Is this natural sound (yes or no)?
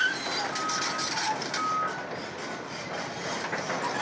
yes